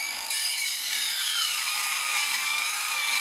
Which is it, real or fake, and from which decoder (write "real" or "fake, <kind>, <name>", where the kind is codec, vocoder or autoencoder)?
fake, codec, DAC